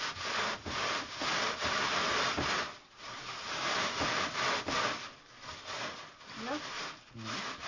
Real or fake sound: real